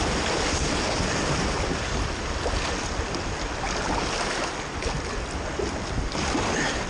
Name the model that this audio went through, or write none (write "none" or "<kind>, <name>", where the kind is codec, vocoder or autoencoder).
none